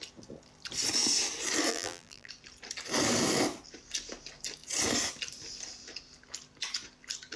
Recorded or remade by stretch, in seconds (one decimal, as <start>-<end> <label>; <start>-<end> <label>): 0.0-1.7 recorded; 1.7-2.3 remade; 2.3-7.4 recorded